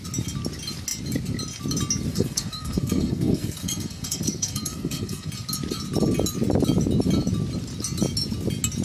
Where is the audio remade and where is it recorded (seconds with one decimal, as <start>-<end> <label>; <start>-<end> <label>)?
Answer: 0.0-2.1 recorded; 2.1-5.3 remade; 5.3-8.8 recorded